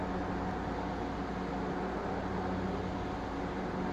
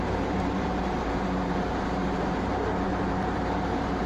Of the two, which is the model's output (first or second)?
second